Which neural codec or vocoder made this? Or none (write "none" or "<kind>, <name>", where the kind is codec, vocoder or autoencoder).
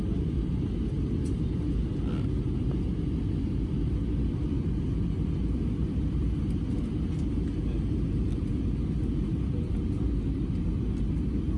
none